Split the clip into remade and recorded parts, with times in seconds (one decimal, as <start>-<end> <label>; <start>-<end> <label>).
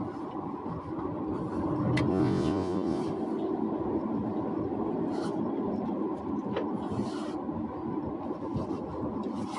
0.0-2.1 recorded; 2.1-3.0 remade; 3.0-9.6 recorded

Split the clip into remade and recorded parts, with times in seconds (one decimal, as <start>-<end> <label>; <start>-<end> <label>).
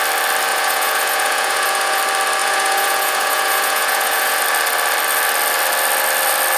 0.0-0.5 recorded; 0.5-2.0 remade; 2.0-2.4 recorded; 2.4-4.4 remade; 4.4-6.6 recorded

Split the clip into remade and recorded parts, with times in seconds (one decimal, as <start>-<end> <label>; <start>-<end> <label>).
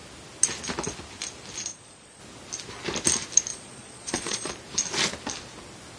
0.0-1.7 recorded; 1.7-2.2 remade; 2.2-3.5 recorded; 3.5-4.5 remade; 4.5-6.0 recorded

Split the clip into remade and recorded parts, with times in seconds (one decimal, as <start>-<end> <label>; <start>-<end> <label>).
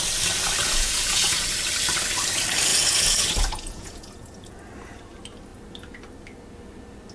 0.0-0.6 recorded; 0.6-1.5 remade; 1.5-2.7 recorded; 2.7-4.5 remade; 4.5-7.1 recorded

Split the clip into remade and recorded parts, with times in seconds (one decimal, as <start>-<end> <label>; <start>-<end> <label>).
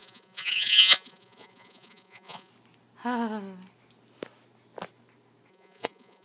0.0-2.5 remade; 2.5-5.5 recorded; 5.5-6.2 remade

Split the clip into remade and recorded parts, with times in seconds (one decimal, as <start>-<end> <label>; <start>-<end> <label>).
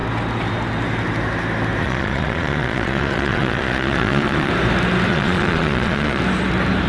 0.0-1.8 recorded; 1.8-4.5 remade; 4.5-5.1 recorded; 5.1-6.2 remade; 6.2-6.9 recorded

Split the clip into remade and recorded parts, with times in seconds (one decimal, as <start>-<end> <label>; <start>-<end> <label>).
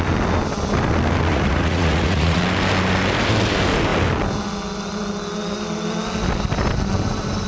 0.0-1.3 recorded; 1.3-2.4 remade; 2.4-7.5 recorded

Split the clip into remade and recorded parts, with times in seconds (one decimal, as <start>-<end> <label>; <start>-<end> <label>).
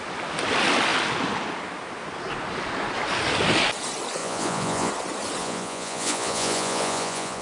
0.0-4.2 recorded; 4.2-4.9 remade; 4.9-5.4 recorded; 5.4-7.4 remade